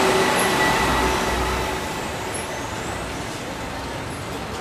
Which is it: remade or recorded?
recorded